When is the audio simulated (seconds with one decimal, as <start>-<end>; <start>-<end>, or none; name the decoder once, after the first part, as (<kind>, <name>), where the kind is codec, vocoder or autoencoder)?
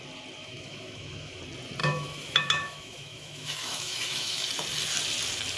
0.4-1.4 (autoencoder, DAC-VAE); 1.8-4.5